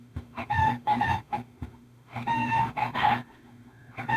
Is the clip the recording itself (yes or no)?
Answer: no